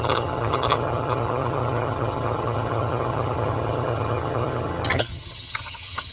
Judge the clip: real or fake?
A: fake